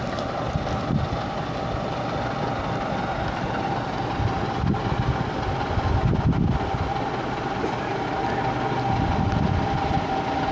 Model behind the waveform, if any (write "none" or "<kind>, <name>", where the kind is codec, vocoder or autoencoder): none